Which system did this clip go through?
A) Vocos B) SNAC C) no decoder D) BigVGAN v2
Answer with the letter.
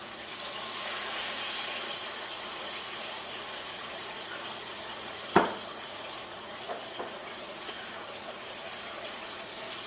A